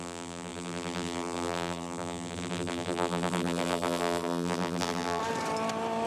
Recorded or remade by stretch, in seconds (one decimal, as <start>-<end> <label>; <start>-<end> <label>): 0.0-5.2 remade; 5.2-6.1 recorded